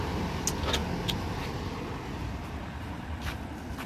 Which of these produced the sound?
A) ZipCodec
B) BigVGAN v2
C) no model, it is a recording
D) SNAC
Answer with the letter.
C